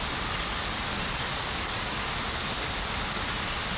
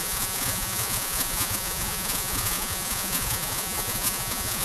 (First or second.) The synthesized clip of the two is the second